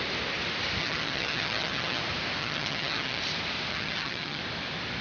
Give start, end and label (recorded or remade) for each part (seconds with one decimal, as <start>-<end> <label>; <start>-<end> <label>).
0.0-0.8 recorded; 0.8-2.0 remade; 2.0-2.4 recorded; 2.4-3.2 remade; 3.2-3.7 recorded; 3.7-4.4 remade; 4.4-5.0 recorded